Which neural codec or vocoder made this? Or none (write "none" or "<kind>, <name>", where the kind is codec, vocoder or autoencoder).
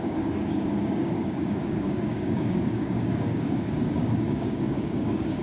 codec, DAC